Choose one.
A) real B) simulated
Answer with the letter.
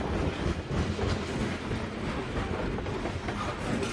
A